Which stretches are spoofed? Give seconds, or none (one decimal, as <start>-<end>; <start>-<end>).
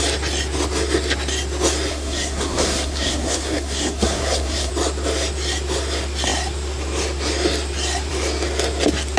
1.9-4.7